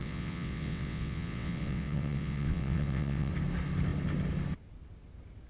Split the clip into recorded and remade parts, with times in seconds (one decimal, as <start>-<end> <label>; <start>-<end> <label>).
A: 0.0-3.3 remade; 3.3-5.5 recorded